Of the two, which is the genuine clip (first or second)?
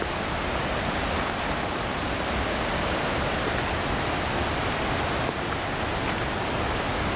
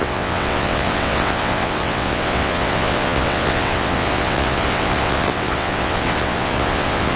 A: first